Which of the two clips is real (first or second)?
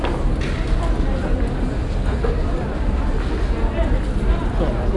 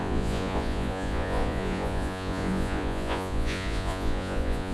first